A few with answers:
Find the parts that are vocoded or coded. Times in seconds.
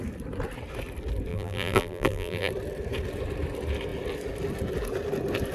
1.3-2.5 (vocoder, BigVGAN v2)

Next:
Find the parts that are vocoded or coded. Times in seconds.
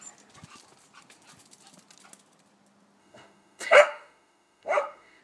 3.0-5.2 (autoencoder, DAC-VAE)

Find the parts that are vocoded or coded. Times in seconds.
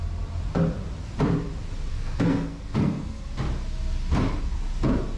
1.9-3.2 (codec, SNAC)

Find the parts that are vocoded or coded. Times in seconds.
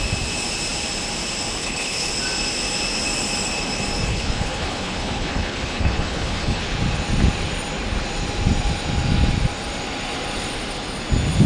1.6-2.1 (codec, HILCodec); 4.1-6.6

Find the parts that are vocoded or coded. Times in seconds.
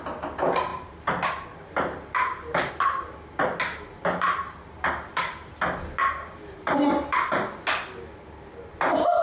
none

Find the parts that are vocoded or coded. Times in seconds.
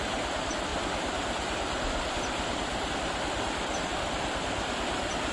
none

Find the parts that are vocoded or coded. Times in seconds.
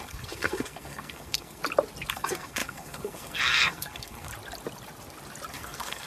0.0-1.6 (codec, SNAC); 2.1-4.3; 5.5-6.1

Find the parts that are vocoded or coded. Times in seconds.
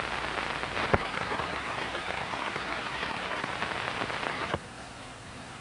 0.9-3.5 (codec, SNAC); 4.3-5.6